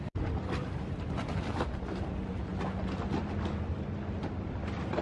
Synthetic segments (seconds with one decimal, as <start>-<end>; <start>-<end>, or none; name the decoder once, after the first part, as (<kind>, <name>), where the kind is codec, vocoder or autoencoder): none